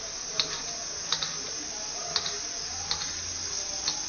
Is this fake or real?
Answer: real